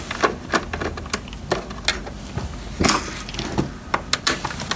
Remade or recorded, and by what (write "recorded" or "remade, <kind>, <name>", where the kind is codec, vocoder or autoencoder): recorded